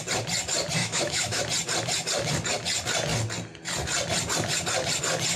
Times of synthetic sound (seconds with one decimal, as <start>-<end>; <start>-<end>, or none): 0.8-1.4